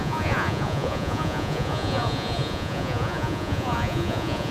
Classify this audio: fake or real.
fake